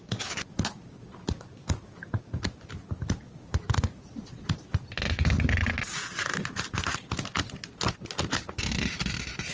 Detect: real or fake real